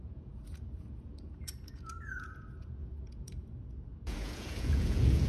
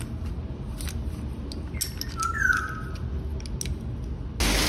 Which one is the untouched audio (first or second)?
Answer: second